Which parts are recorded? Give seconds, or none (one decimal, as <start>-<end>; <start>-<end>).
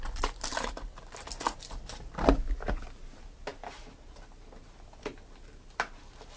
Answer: 0.0-6.4